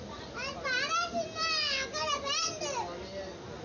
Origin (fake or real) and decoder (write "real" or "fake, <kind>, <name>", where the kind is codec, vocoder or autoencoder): real